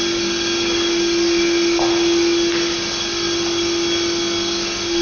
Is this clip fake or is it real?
real